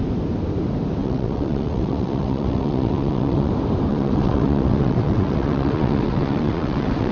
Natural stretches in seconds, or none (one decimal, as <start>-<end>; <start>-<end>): 0.0-1.0; 3.5-3.9